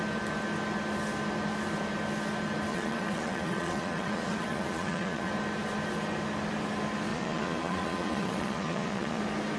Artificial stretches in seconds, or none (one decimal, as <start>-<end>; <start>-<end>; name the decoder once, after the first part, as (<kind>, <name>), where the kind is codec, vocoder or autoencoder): 2.7-5.3 (vocoder, Vocos); 7.1-9.2